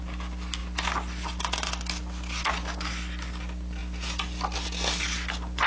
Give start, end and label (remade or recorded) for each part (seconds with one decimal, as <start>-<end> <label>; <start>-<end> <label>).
0.0-5.7 recorded